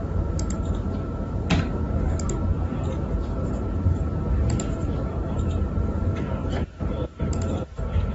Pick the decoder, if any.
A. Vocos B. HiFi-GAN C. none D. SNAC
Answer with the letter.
C